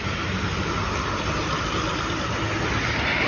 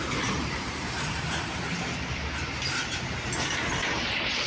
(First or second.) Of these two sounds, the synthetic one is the second